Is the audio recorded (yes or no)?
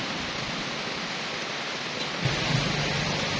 yes